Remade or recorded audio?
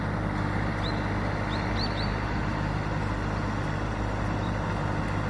recorded